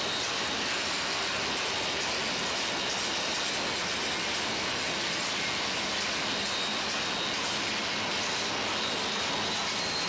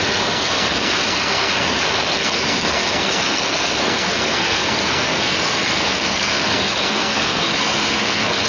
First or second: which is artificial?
second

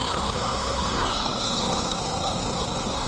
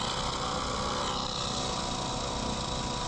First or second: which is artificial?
first